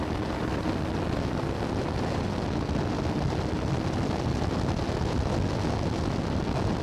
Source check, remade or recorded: recorded